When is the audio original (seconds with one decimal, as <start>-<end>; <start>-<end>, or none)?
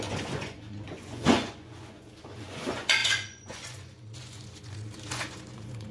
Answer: none